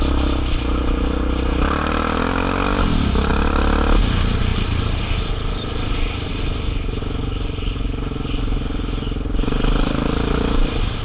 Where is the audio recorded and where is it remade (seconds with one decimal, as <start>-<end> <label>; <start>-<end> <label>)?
0.0-11.0 recorded